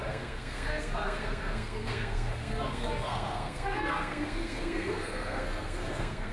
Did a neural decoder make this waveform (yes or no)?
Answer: yes